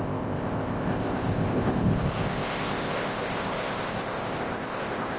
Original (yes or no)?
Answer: no